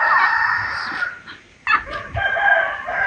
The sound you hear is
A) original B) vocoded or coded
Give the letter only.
A